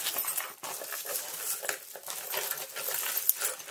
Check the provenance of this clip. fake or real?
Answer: real